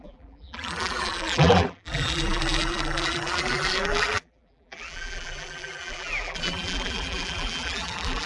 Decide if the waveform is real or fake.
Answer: fake